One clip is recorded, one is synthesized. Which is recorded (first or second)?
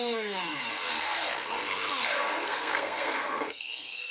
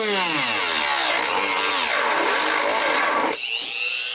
second